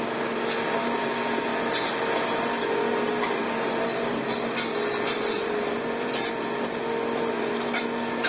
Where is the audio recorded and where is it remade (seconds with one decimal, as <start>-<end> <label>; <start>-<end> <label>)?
0.0-4.7 recorded; 4.7-6.3 remade; 6.3-8.3 recorded